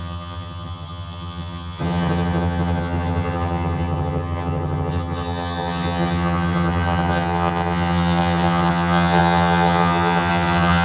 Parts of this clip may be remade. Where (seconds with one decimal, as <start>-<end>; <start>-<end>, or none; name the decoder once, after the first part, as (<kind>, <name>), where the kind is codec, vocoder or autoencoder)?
0.0-10.8 (vocoder, HiFi-GAN)